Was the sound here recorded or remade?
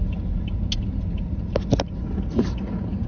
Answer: recorded